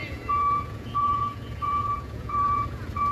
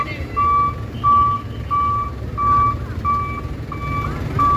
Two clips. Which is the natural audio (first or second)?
second